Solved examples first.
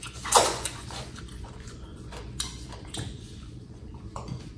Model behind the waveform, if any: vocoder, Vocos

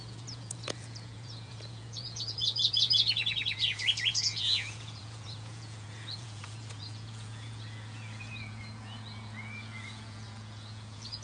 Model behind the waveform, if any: vocoder, Vocos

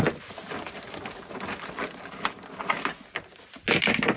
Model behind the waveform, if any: none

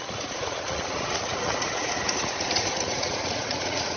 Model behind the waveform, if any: vocoder, Vocos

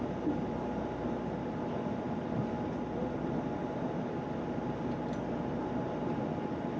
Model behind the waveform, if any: none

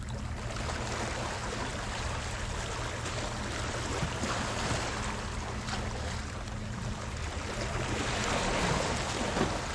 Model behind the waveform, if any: none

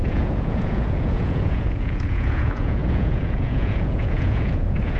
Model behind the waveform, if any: vocoder, Vocos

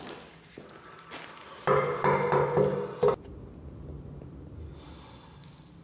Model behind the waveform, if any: none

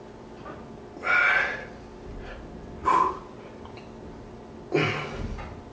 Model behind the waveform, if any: none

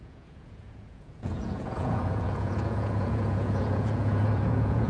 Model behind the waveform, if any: vocoder, Vocos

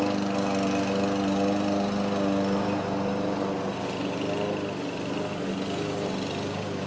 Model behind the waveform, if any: none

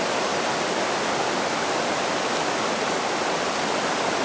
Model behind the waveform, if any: none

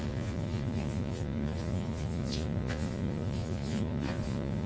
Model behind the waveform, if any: vocoder, Vocos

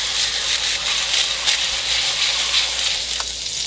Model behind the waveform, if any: none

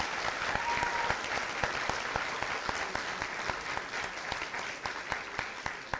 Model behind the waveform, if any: none